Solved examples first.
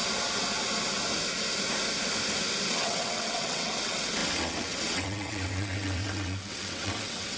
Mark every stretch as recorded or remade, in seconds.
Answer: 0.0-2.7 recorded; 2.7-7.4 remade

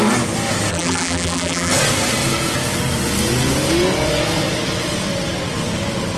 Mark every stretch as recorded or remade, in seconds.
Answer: 0.0-0.7 recorded; 0.7-1.7 remade; 1.7-6.2 recorded